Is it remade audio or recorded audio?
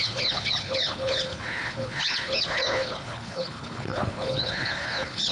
remade